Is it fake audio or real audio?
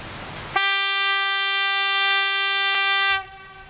real